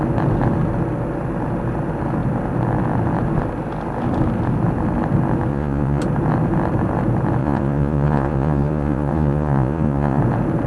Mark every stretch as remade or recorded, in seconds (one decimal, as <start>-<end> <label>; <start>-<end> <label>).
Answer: 0.0-5.5 recorded; 5.5-6.0 remade; 6.0-7.4 recorded; 7.4-10.2 remade; 10.2-10.7 recorded